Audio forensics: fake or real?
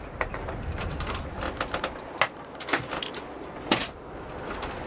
real